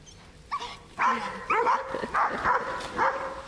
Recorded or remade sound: recorded